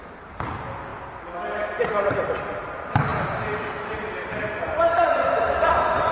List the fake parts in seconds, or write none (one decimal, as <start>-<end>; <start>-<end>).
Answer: 0.0-0.9; 1.7-3.1; 3.6-6.1